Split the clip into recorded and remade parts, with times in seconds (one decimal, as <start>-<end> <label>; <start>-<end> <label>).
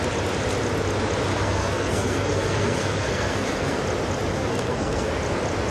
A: 0.0-1.3 recorded; 1.3-3.8 remade; 3.8-4.3 recorded; 4.3-5.1 remade; 5.1-5.7 recorded